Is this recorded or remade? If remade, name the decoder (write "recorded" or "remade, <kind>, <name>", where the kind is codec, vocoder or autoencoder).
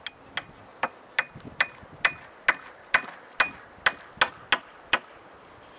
recorded